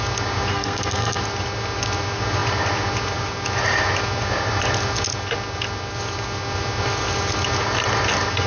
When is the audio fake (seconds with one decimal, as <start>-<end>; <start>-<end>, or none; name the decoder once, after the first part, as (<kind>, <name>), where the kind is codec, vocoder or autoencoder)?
0.5-1.2 (codec, SNAC)